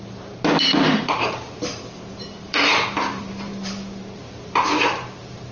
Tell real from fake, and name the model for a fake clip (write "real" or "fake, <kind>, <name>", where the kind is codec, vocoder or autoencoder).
fake, vocoder, BigVGAN v2